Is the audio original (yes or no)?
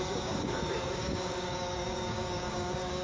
no